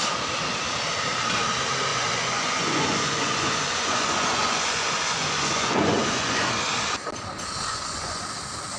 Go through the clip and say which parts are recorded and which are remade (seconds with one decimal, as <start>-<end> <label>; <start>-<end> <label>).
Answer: 0.0-1.9 recorded; 1.9-6.5 remade; 6.5-7.7 recorded; 7.7-8.2 remade; 8.2-8.8 recorded